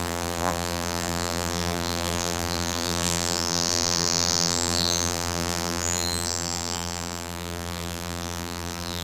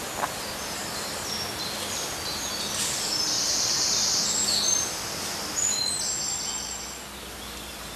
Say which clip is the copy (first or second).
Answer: first